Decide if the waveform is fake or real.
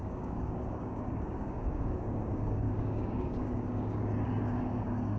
fake